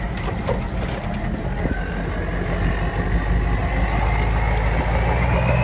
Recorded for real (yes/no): yes